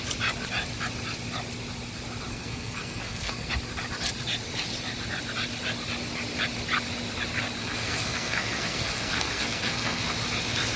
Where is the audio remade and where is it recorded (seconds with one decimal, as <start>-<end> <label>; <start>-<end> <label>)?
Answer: 0.0-2.3 recorded; 2.3-3.5 remade; 3.5-7.6 recorded; 7.6-10.0 remade; 10.0-10.8 recorded